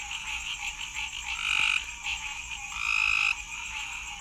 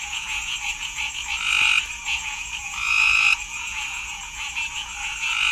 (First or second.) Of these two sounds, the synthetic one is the second